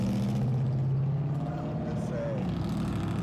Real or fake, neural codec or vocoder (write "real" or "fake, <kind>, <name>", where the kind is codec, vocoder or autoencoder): real